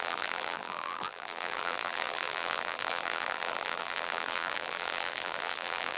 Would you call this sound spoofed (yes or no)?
yes